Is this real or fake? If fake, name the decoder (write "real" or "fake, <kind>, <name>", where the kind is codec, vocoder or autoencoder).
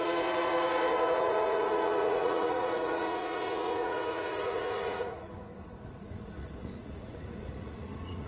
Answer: fake, vocoder, Vocos